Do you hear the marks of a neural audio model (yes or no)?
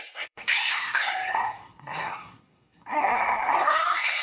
yes